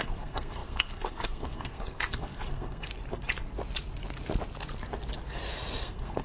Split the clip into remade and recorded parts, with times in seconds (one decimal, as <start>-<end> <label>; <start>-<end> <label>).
0.0-2.9 remade; 2.9-5.8 recorded; 5.8-6.2 remade